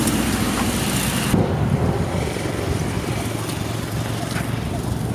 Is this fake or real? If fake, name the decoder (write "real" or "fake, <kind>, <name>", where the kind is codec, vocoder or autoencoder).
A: fake, vocoder, BigVGAN v2